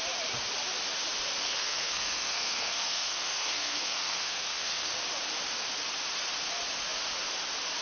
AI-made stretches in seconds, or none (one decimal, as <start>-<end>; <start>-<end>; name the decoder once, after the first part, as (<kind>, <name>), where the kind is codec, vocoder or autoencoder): 1.4-4.9 (codec, SNAC)